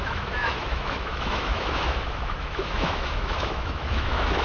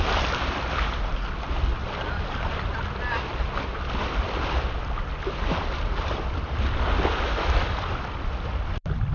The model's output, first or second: first